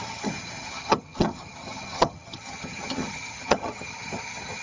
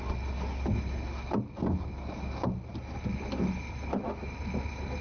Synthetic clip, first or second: first